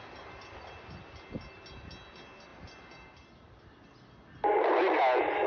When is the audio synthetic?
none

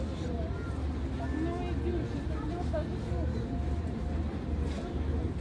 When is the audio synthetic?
1.9-5.4 (vocoder, BigVGAN v2)

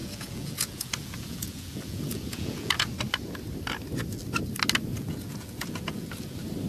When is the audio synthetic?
0.0-2.7 (vocoder, Vocos); 4.9-6.1

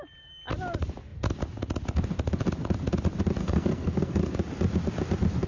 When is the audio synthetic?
3.4-4.3 (codec, SNAC)